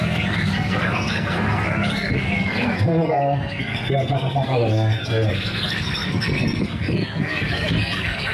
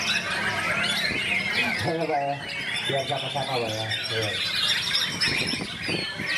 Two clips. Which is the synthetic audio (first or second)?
first